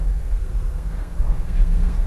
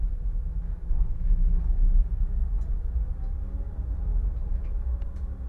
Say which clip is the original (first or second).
second